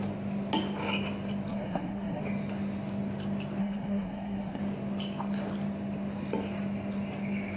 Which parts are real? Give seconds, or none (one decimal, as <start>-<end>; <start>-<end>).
0.0-1.5; 2.2-3.6; 4.6-7.6